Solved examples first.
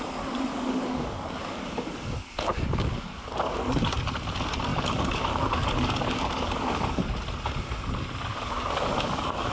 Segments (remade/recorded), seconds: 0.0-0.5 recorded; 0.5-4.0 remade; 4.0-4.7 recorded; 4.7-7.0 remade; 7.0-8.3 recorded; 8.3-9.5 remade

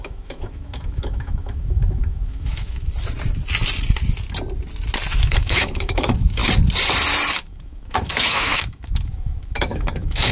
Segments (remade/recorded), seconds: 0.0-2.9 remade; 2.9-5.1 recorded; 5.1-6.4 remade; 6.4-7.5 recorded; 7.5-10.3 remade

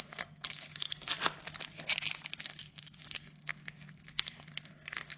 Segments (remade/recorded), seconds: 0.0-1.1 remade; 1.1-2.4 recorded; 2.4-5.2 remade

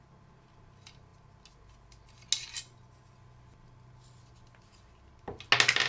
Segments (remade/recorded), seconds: 0.0-5.9 recorded

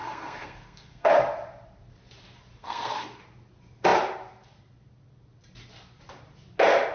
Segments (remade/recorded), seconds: 0.0-1.1 remade; 1.1-2.6 recorded; 2.6-3.2 remade; 3.2-6.9 recorded

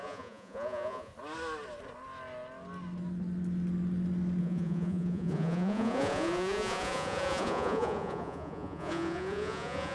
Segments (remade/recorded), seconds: 0.0-1.1 remade; 1.1-4.4 recorded; 4.4-9.9 remade

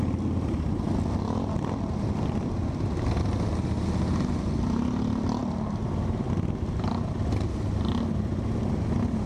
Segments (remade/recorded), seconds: 0.0-9.3 recorded

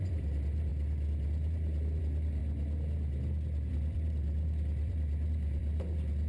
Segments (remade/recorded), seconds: 0.0-2.4 remade; 2.4-3.7 recorded; 3.7-5.6 remade; 5.6-6.3 recorded